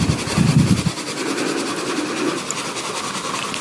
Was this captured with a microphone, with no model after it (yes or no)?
yes